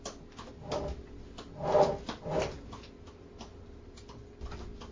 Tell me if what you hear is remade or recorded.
recorded